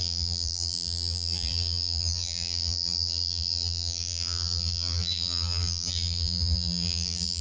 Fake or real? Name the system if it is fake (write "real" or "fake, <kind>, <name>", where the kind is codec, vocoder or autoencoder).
fake, vocoder, BigVGAN v2